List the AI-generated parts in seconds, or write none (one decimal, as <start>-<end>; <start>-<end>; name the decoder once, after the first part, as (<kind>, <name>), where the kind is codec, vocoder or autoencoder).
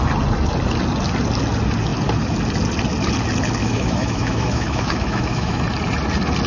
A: 3.6-5.6 (autoencoder, DAC-VAE)